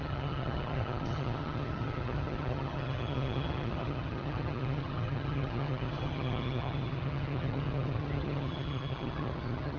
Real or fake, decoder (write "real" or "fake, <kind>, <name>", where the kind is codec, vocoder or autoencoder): fake, vocoder, HiFi-GAN